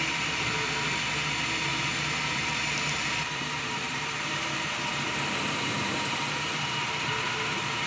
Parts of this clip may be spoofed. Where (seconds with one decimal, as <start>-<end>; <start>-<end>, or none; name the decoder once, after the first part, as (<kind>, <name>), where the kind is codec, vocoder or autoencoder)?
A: 1.7-6.2 (vocoder, BigVGAN v2)